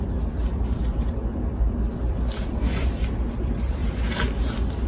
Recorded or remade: remade